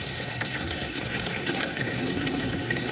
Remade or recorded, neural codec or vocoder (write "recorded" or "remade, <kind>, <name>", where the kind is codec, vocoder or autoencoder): remade, codec, SNAC